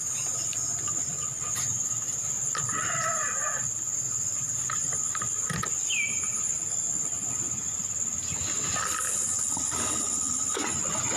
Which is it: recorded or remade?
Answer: recorded